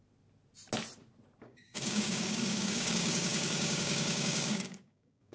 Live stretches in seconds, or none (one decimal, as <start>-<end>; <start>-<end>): 0.0-1.4